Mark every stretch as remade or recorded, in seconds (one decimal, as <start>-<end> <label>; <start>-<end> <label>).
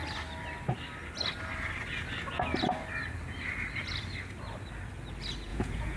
0.0-5.5 recorded; 5.5-6.0 remade